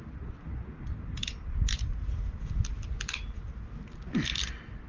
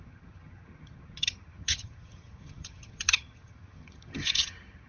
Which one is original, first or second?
first